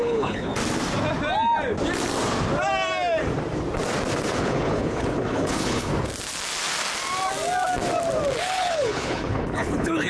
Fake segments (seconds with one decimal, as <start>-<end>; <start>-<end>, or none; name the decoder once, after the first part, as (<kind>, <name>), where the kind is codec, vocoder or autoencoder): 0.0-0.5 (codec, HILCodec); 4.4-5.9; 8.4-10.1

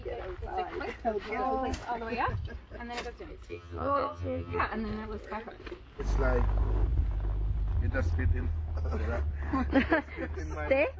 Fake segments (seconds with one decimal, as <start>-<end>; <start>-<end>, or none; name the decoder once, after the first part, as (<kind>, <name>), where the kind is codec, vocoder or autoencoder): 3.5-4.6 (vocoder, HiFi-GAN)

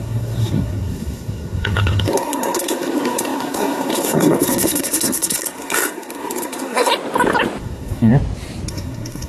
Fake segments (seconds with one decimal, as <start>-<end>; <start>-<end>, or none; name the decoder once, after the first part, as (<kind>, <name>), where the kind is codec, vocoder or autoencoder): 0.0-6.9 (codec, SNAC); 7.6-8.1; 8.7-9.3

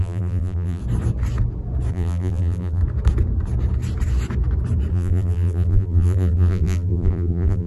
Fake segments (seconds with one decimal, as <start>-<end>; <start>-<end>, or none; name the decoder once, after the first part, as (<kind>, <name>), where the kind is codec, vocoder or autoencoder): 0.0-0.8 (vocoder, BigVGAN v2); 1.9-2.8; 4.9-7.7

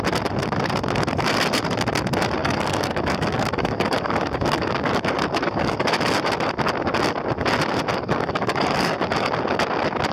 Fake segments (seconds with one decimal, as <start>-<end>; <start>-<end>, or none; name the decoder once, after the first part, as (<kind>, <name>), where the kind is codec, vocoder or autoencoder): 2.4-6.0 (codec, DAC); 7.9-9.3

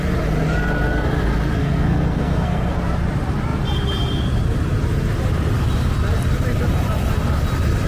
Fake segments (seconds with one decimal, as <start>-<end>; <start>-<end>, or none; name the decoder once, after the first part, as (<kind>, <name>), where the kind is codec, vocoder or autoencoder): 1.6-2.7 (codec, SNAC)

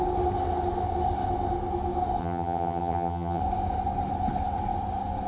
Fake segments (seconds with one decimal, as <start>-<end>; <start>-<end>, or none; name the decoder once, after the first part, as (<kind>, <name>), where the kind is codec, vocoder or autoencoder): 2.2-3.4 (vocoder, HiFi-GAN)

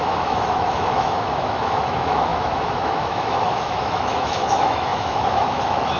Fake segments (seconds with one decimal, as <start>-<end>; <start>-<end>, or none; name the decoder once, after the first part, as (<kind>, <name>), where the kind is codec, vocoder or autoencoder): 0.0-6.0 (autoencoder, DAC-VAE)